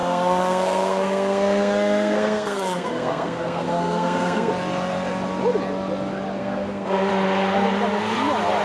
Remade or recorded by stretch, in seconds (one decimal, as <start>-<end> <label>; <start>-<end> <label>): 0.0-4.5 remade; 4.5-6.4 recorded; 6.4-7.1 remade; 7.1-8.6 recorded